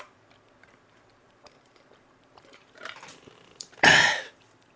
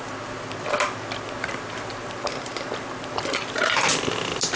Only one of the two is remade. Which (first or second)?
first